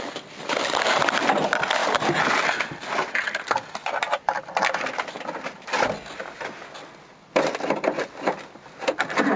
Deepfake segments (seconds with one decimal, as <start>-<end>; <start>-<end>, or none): none